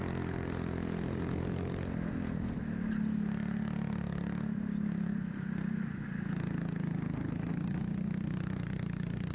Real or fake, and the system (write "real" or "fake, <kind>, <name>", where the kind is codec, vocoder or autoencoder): real